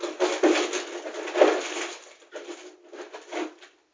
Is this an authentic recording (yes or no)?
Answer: yes